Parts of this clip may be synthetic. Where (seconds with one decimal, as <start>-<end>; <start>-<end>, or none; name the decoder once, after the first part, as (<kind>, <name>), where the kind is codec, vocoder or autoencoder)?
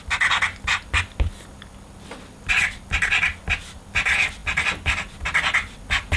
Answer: none